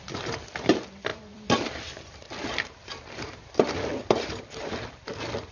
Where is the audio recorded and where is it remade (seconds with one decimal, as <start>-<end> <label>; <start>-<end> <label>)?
0.0-5.5 remade